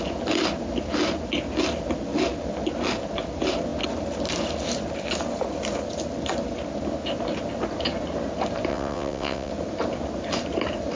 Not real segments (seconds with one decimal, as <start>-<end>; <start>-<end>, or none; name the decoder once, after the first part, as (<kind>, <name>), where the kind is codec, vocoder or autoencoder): 8.7-9.5 (vocoder, WaveNeXt)